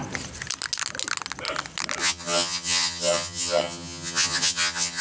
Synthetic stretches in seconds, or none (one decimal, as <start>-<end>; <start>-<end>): 2.0-5.0